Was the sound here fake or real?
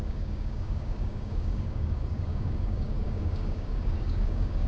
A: fake